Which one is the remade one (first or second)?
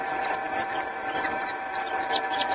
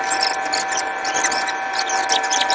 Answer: first